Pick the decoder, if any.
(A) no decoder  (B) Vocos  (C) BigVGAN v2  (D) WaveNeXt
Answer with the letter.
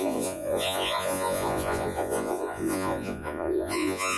B